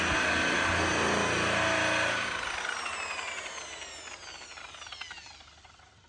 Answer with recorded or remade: recorded